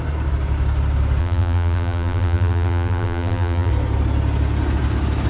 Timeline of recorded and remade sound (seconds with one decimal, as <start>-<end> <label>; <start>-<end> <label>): 0.0-1.2 recorded; 1.2-3.7 remade; 3.7-5.3 recorded